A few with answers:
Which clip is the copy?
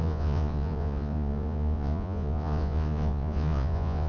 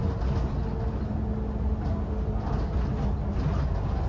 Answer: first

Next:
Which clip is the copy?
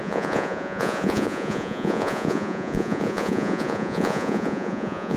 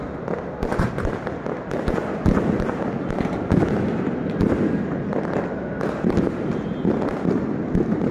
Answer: first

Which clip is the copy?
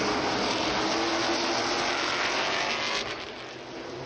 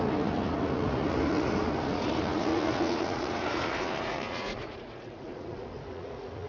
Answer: second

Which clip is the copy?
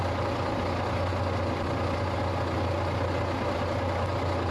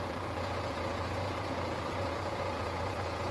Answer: second